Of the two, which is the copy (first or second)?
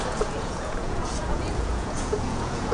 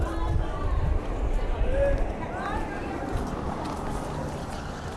first